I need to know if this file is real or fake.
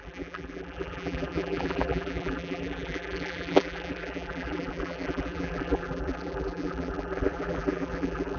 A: fake